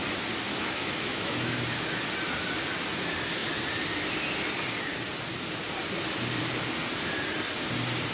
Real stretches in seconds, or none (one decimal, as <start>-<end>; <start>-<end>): 0.0-0.5; 1.6-8.1